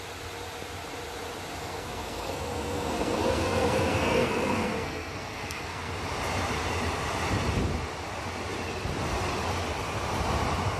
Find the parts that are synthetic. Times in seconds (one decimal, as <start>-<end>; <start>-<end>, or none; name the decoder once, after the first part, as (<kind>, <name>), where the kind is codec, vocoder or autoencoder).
1.6-5.9 (codec, SNAC)